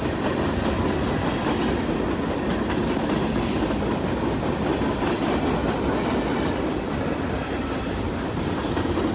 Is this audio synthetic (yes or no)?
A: no